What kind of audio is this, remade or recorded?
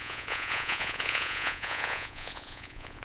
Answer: remade